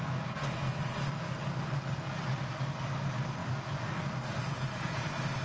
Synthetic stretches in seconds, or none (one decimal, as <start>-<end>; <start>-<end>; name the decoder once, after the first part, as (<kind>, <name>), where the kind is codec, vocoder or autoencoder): none